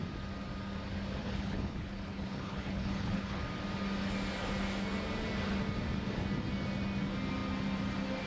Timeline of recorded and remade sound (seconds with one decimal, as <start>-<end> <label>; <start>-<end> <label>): 0.0-1.2 recorded; 1.2-3.4 remade; 3.4-8.3 recorded